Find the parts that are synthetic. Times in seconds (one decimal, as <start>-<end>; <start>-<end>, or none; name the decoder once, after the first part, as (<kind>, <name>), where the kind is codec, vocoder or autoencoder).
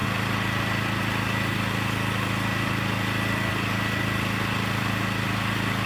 none